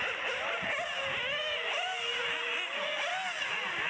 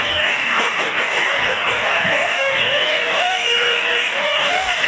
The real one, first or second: first